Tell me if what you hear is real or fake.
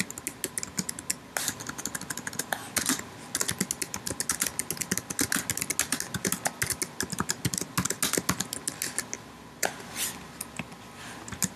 real